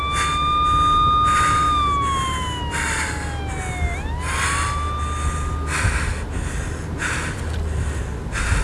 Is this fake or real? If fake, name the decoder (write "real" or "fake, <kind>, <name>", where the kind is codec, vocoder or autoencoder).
real